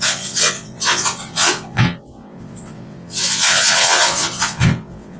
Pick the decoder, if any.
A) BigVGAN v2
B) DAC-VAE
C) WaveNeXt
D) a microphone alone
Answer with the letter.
C